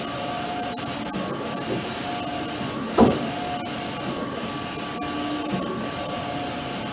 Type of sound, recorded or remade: recorded